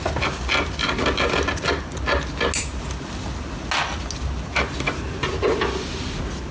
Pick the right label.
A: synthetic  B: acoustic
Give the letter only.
B